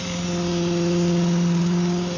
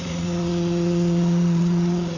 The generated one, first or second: second